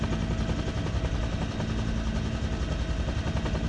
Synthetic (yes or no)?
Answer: no